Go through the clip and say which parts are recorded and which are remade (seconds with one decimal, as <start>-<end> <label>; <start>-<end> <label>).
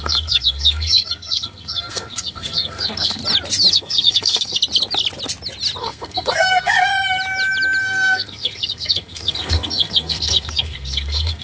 0.0-3.2 remade; 3.2-3.7 recorded; 3.7-4.6 remade; 4.6-5.8 recorded; 5.8-6.9 remade; 6.9-7.8 recorded; 7.8-11.4 remade